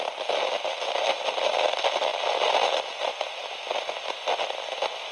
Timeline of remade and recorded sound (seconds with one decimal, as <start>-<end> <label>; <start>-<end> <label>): 0.0-5.1 recorded